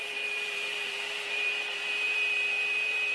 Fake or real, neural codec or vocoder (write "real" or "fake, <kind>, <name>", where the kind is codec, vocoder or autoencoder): fake, vocoder, BigVGAN v2